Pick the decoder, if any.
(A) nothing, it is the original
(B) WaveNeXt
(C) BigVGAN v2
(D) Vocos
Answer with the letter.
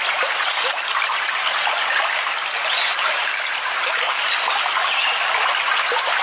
A